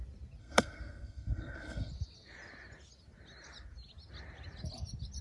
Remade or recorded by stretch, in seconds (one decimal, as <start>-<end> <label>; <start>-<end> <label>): 0.0-0.4 recorded; 0.4-1.9 remade; 1.9-5.2 recorded